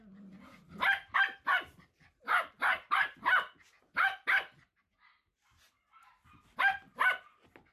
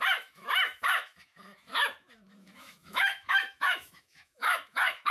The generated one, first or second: second